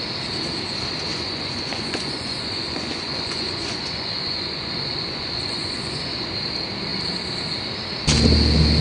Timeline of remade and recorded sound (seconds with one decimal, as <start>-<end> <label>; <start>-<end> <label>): 0.0-1.1 recorded; 1.1-6.3 remade; 6.3-8.8 recorded